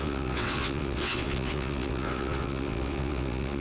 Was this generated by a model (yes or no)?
yes